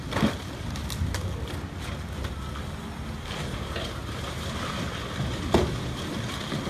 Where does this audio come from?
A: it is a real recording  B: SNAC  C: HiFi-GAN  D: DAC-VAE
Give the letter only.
A